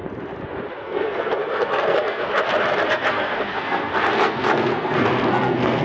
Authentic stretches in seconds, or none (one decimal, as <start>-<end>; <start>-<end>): 0.0-0.8; 2.3-2.9